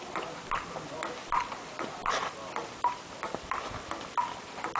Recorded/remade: recorded